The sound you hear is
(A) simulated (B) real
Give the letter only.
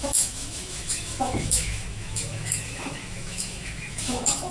A